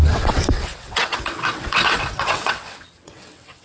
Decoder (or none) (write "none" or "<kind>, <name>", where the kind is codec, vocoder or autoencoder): vocoder, WaveNeXt